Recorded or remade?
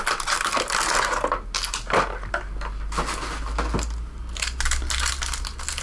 recorded